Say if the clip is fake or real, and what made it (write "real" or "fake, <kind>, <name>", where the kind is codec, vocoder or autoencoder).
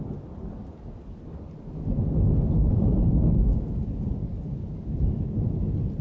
real